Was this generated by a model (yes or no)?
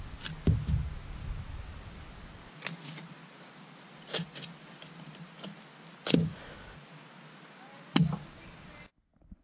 no